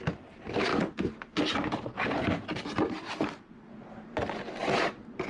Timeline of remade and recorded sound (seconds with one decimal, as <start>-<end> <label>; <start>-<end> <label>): 0.0-4.6 recorded; 4.6-5.3 remade